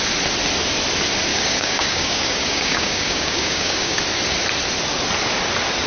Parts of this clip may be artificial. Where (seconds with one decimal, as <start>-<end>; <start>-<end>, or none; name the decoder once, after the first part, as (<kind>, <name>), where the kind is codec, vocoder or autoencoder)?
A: 1.3-4.0 (codec, DAC)